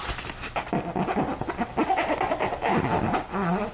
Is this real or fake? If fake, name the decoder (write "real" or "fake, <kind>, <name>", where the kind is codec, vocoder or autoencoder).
real